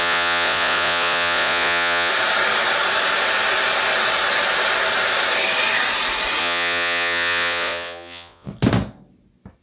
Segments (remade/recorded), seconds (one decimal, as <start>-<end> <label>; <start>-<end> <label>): 0.0-2.1 remade; 2.1-6.4 recorded; 6.4-8.5 remade; 8.5-9.6 recorded